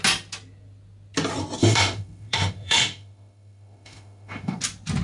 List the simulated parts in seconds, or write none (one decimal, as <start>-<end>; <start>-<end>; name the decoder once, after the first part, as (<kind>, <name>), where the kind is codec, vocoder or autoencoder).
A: 1.6-4.6 (autoencoder, DAC-VAE)